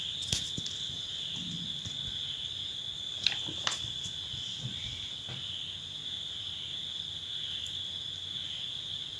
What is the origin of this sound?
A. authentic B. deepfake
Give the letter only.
A